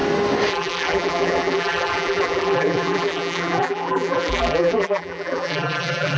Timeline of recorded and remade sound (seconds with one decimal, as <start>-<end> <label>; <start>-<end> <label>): 0.0-0.5 recorded; 0.5-6.2 remade